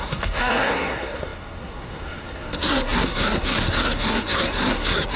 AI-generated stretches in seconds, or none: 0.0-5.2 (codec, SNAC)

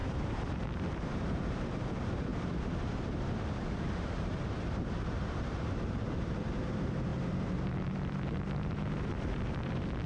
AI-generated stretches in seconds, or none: 0.0-2.3 (vocoder, BigVGAN v2); 3.4-10.1